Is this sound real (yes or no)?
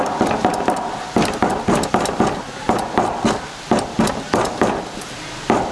yes